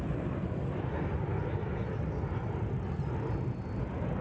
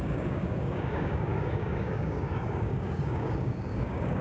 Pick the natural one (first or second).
first